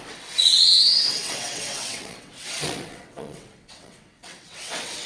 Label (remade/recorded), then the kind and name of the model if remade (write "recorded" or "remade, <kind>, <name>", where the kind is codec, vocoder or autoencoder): remade, vocoder, WaveNeXt